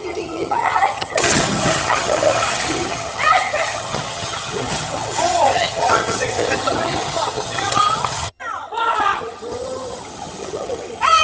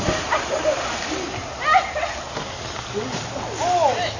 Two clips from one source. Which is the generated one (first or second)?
first